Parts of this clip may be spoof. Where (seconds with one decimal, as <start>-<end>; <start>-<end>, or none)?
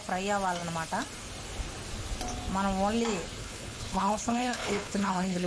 3.4-5.5